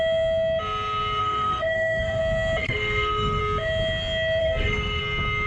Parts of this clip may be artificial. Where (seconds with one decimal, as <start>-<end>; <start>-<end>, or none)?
1.2-2.2; 2.6-3.4; 4.4-5.0